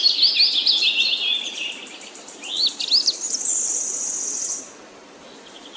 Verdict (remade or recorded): recorded